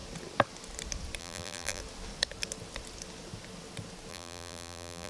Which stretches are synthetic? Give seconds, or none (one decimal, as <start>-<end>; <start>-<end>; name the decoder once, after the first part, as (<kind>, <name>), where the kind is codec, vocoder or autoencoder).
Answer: 1.2-1.8 (vocoder, BigVGAN v2); 4.1-5.1